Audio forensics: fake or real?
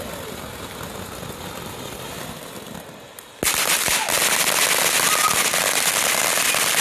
real